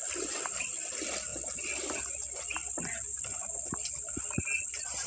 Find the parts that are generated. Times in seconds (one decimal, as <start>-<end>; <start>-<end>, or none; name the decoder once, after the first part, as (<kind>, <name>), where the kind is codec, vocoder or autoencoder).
none